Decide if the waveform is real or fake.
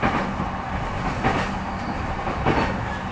real